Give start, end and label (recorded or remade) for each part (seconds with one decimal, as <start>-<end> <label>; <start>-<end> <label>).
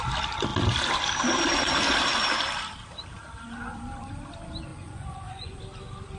0.0-4.7 recorded; 4.7-5.6 remade; 5.6-6.2 recorded